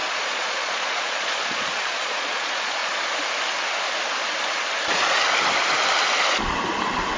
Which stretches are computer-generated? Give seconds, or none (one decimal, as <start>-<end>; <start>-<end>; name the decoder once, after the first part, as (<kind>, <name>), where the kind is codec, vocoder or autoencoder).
0.0-2.8 (vocoder, Vocos)